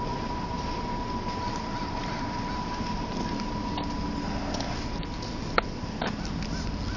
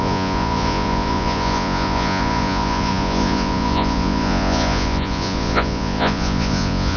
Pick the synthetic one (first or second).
second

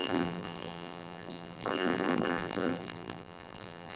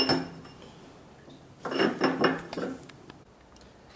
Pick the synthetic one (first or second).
first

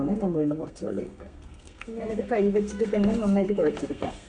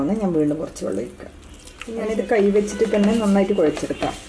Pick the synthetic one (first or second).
first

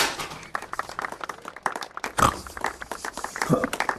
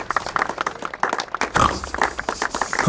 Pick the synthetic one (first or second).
first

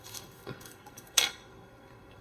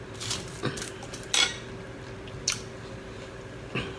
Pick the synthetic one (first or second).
first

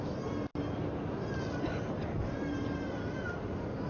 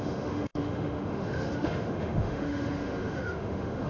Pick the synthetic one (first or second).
second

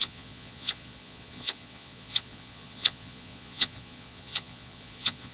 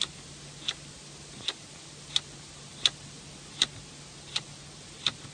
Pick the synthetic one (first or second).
first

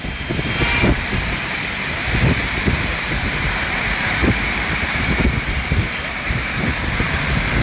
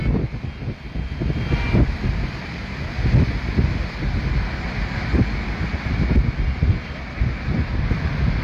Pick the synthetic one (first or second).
first